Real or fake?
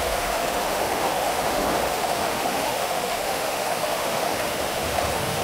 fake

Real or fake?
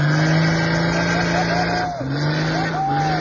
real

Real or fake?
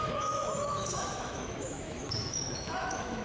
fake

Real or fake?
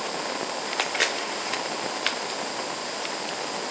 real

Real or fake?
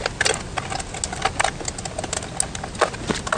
real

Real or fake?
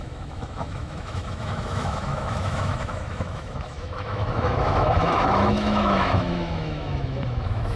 fake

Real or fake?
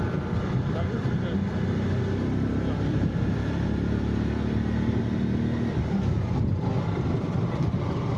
real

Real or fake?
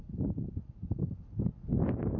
real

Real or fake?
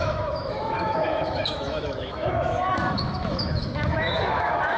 fake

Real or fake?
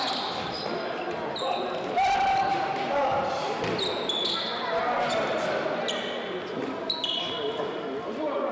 real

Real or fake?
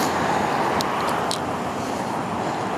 real